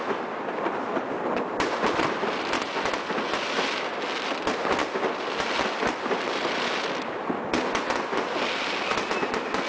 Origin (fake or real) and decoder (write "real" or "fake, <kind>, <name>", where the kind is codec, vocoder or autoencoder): real